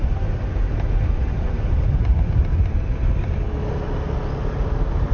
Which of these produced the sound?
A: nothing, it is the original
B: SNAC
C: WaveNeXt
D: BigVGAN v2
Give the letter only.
A